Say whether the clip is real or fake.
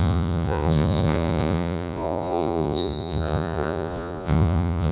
fake